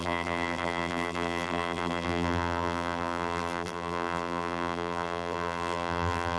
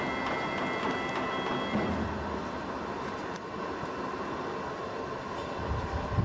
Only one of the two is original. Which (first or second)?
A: second